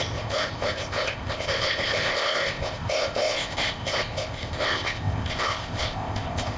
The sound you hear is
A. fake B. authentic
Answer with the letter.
A